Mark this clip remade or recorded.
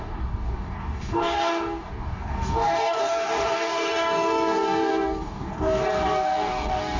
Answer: remade